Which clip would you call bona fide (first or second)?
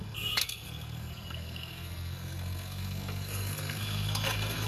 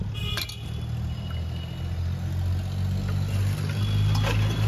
second